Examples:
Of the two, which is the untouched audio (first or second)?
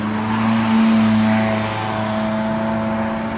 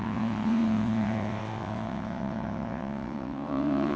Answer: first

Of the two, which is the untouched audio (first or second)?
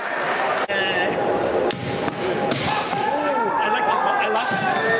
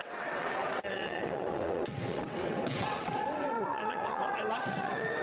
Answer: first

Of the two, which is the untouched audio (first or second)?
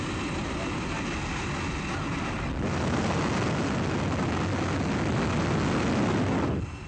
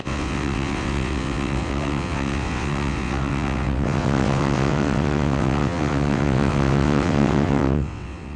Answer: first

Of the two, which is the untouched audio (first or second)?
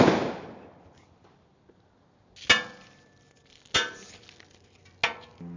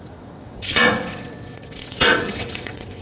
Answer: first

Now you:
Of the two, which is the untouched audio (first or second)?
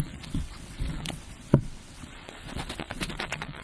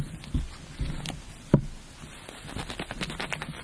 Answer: second